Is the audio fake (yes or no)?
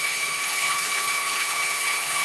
yes